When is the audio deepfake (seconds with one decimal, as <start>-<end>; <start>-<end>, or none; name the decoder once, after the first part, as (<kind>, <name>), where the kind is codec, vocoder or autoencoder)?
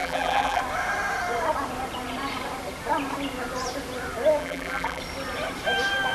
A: 0.0-0.6 (vocoder, BigVGAN v2); 4.4-5.0